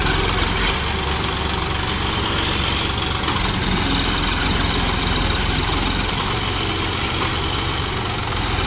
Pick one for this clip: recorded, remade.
recorded